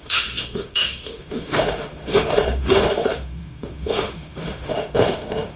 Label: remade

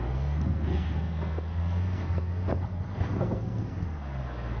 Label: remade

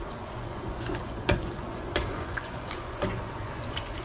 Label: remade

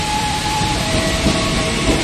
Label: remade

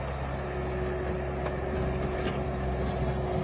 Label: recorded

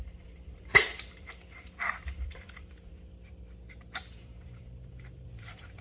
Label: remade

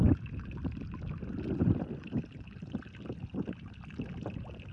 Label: recorded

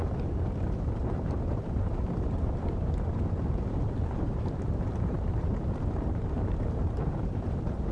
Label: remade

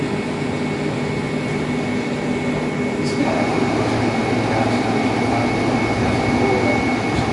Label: recorded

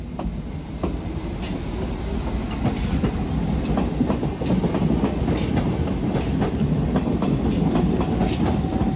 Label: recorded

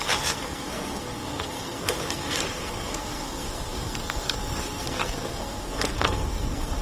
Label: remade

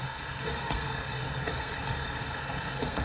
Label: remade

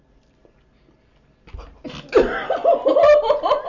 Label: recorded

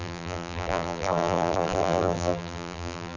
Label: remade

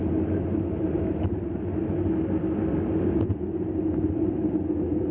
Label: recorded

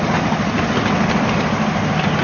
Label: recorded